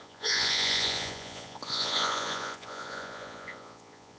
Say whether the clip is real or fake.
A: fake